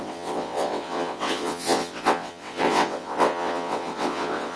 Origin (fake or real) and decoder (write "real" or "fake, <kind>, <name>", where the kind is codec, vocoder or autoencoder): fake, vocoder, WaveNeXt